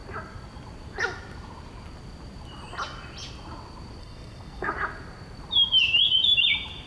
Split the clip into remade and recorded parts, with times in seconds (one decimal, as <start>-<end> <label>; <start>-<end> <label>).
0.0-4.0 recorded; 4.0-4.7 remade; 4.7-6.9 recorded